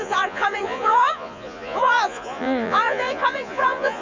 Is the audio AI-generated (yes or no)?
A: yes